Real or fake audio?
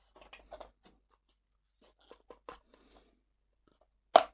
real